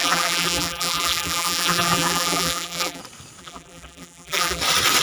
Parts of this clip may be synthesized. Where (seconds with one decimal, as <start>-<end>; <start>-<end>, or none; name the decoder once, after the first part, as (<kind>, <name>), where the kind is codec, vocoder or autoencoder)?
0.0-3.0 (vocoder, BigVGAN v2); 3.4-4.6